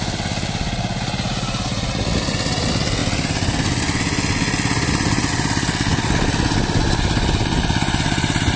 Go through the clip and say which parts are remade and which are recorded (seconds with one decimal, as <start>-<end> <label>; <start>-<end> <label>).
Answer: 0.0-0.6 recorded; 0.6-2.2 remade; 2.2-8.6 recorded